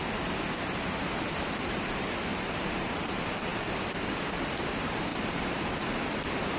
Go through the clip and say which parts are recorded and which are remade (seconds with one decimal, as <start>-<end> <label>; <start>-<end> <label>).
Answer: 0.0-2.3 recorded; 2.3-2.9 remade; 2.9-5.1 recorded; 5.1-5.7 remade; 5.7-6.6 recorded